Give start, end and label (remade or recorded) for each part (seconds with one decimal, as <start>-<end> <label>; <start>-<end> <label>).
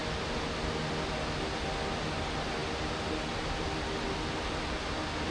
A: 0.0-5.3 recorded